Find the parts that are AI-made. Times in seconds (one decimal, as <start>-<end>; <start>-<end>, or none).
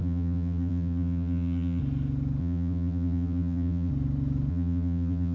0.0-1.8; 2.4-3.9; 4.5-5.3